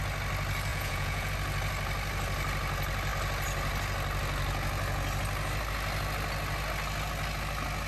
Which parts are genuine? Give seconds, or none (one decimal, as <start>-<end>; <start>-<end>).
0.0-0.7; 1.3-7.9